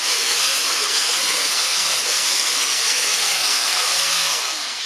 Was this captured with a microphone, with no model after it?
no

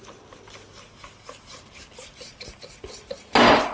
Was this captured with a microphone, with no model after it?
yes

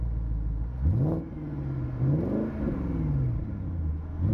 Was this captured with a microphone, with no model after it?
yes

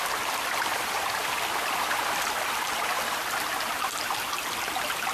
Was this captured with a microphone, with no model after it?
yes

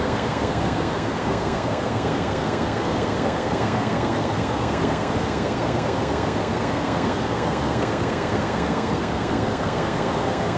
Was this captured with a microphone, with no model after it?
no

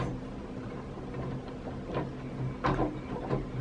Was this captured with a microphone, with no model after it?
yes